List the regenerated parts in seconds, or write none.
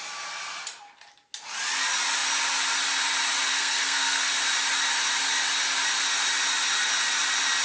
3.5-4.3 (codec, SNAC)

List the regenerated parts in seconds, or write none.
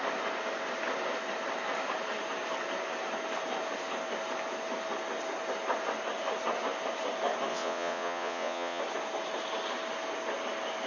7.5-8.8 (vocoder, WaveNeXt)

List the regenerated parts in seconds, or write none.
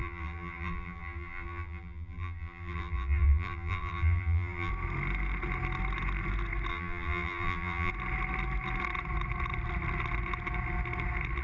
0.0-4.7 (vocoder, BigVGAN v2); 6.7-7.9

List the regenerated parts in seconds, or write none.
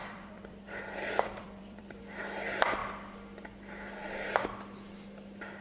0.0-2.0 (vocoder, BigVGAN v2)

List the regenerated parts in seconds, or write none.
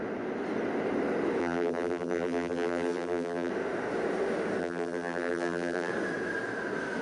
1.4-3.5 (vocoder, BigVGAN v2); 4.6-5.9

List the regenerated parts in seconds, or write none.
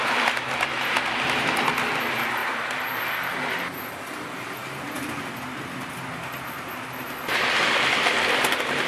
2.4-3.3 (vocoder, BigVGAN v2)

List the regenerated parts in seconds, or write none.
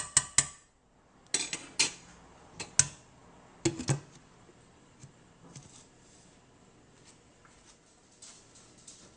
none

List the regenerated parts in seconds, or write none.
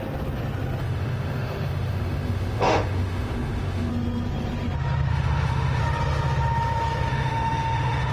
0.8-3.9 (autoencoder, DAC-VAE); 5.1-5.8; 7.1-8.1